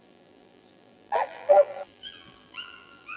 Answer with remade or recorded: remade